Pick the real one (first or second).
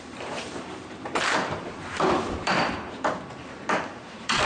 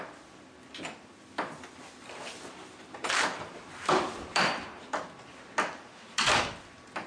second